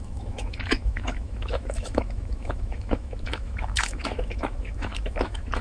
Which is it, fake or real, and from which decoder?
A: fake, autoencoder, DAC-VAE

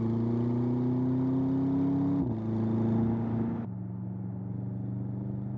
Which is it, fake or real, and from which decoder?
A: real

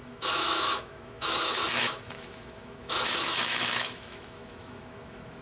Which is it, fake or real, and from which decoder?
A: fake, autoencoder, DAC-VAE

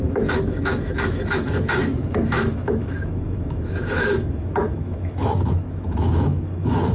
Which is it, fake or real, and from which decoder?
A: fake, autoencoder, DAC-VAE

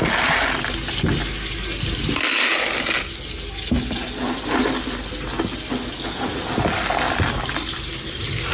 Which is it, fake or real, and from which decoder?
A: real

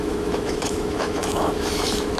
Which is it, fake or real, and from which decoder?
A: fake, autoencoder, DAC-VAE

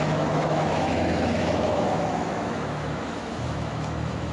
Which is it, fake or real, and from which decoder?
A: fake, autoencoder, DAC-VAE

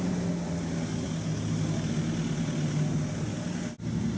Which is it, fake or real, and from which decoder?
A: real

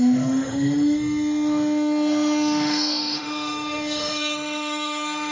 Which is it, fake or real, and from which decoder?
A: fake, autoencoder, DAC-VAE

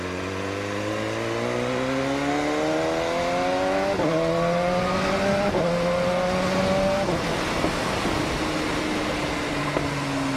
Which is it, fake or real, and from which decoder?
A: real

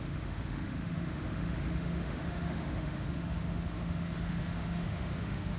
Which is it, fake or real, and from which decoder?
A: fake, autoencoder, DAC-VAE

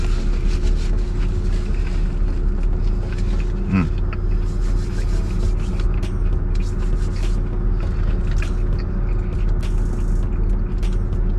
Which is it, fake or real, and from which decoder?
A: real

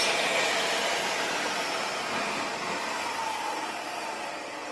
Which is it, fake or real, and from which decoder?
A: real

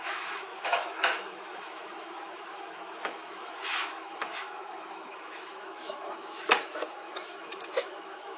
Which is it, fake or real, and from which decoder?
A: fake, autoencoder, DAC-VAE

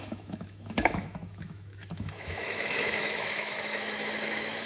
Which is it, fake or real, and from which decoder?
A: fake, autoencoder, DAC-VAE